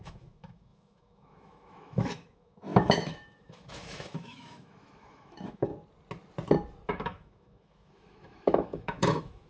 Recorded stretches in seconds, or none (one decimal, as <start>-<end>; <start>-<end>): 5.7-6.9